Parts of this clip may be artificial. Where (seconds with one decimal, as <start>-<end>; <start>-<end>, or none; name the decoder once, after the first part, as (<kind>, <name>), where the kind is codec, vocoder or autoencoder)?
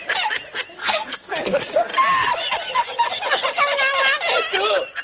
0.8-1.3 (codec, SNAC)